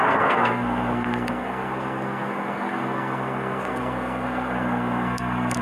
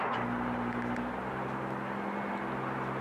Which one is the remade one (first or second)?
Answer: first